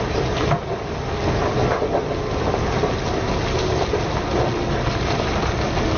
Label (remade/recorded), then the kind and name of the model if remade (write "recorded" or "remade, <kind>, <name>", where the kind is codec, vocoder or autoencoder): recorded